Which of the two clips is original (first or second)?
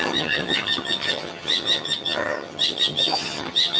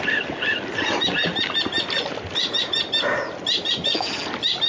second